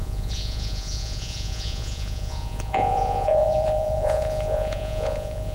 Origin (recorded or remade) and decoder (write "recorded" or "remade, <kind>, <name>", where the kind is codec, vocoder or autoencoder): remade, vocoder, Vocos